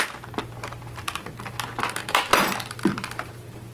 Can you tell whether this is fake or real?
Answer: real